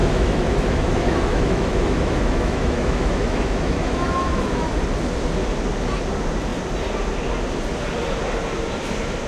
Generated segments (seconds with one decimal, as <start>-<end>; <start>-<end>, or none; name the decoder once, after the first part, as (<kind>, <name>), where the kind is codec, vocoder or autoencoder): 0.0-4.8 (autoencoder, DAC-VAE)